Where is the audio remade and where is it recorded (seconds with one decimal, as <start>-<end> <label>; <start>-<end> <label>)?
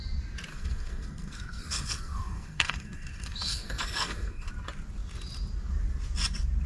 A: 0.0-0.5 recorded; 0.5-4.5 remade; 4.5-6.7 recorded